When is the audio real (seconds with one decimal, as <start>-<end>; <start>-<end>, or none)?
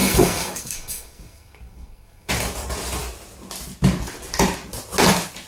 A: 2.3-5.5